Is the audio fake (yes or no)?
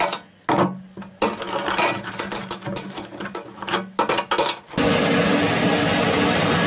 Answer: no